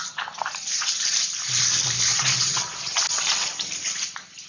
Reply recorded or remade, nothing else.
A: recorded